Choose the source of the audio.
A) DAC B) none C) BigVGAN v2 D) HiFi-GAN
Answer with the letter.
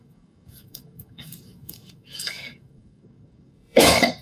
A